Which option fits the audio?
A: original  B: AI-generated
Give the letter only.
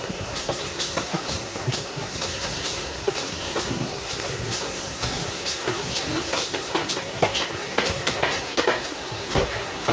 B